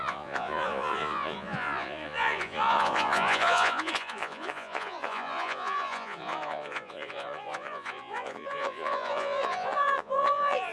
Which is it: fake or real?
fake